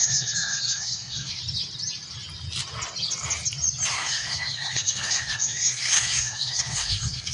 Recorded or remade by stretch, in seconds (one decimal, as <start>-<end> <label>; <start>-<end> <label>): 0.0-1.4 remade; 1.4-3.9 recorded; 3.9-7.3 remade